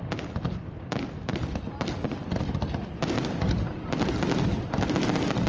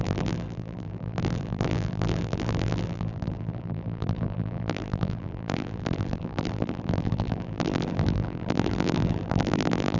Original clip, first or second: first